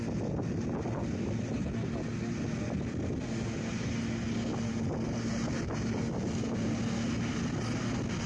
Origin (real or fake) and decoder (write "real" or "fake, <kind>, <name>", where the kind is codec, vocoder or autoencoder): real